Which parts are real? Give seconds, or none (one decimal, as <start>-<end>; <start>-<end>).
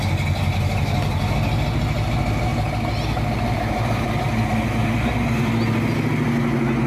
0.0-6.9